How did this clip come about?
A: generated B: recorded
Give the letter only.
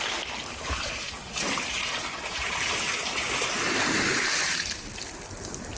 B